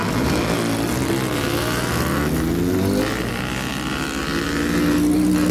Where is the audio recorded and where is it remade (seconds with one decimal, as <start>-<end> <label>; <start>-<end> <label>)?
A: 0.0-5.5 recorded